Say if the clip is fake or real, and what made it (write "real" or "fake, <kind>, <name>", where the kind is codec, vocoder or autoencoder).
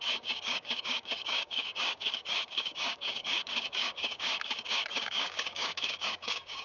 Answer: fake, codec, DAC